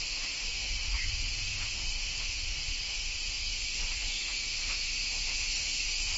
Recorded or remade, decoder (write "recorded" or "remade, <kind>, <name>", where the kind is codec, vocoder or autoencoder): remade, autoencoder, DAC-VAE